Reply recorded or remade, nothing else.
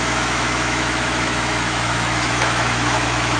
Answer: remade